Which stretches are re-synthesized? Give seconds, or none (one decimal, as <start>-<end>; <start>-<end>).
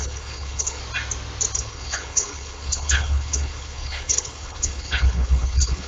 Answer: 0.0-0.8; 1.6-5.9